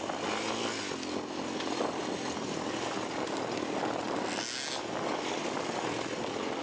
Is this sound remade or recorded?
recorded